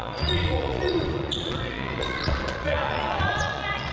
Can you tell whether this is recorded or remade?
remade